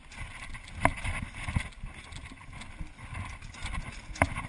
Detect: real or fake real